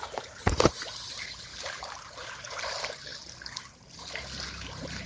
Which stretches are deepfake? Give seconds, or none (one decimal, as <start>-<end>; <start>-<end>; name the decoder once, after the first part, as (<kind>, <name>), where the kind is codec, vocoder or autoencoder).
0.0-3.1 (vocoder, BigVGAN v2); 4.5-5.1